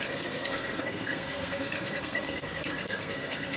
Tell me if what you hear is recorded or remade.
remade